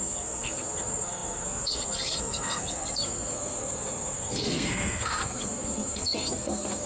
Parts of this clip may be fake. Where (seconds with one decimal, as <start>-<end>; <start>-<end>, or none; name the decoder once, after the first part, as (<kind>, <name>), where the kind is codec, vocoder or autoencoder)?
0.0-6.9 (codec, SNAC)